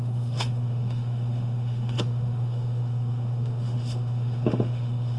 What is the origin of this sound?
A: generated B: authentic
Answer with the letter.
A